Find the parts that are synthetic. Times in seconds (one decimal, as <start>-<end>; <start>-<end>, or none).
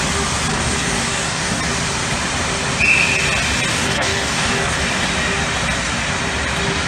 0.5-1.6; 3.7-4.8